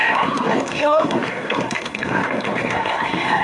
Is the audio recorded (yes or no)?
no